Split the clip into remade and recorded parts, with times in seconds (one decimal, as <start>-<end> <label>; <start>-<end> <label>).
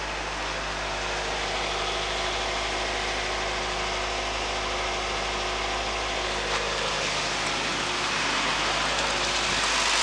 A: 0.0-10.0 recorded